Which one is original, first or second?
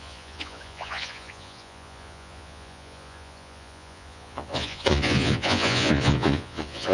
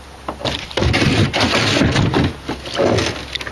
second